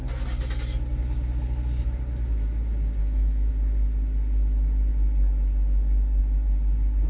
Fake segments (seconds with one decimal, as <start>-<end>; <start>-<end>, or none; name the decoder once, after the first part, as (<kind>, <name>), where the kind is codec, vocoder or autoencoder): 3.0-3.5 (autoencoder, DAC-VAE)